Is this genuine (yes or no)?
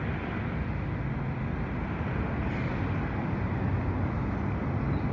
yes